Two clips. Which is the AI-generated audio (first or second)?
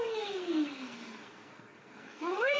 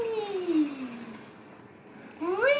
first